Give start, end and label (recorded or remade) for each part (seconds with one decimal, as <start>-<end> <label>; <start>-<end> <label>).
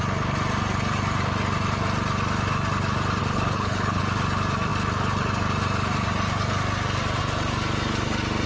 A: 0.0-3.2 recorded; 3.2-4.0 remade; 4.0-8.5 recorded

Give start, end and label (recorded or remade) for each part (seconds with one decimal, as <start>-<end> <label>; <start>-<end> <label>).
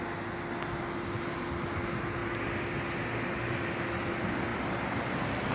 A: 0.0-5.5 recorded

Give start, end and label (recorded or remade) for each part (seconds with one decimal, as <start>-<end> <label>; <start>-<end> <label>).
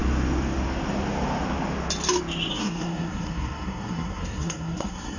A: 0.0-2.5 recorded; 2.5-5.2 remade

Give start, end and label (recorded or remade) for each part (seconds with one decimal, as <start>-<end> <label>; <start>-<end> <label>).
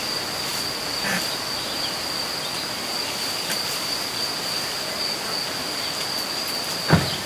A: 0.0-7.3 recorded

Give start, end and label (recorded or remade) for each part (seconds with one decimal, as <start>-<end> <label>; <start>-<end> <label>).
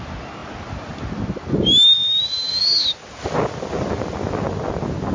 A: 0.0-5.1 recorded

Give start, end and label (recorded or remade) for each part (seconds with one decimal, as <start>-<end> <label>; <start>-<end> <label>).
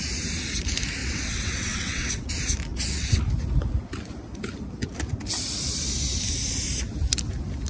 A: 0.0-1.0 recorded; 1.0-2.3 remade; 2.3-2.7 recorded; 2.7-3.2 remade; 3.2-7.7 recorded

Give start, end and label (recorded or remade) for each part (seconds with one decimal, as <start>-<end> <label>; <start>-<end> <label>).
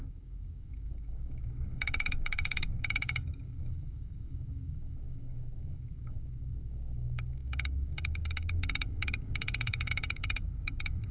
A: 0.0-11.1 remade